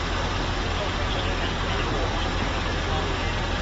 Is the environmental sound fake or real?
real